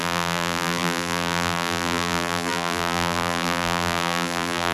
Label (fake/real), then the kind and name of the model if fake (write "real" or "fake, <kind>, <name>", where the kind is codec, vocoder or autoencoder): fake, vocoder, BigVGAN v2